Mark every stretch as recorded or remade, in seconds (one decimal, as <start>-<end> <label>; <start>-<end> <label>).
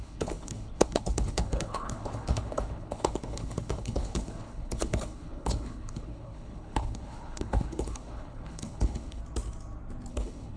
0.0-9.2 remade; 9.2-10.1 recorded; 10.1-10.6 remade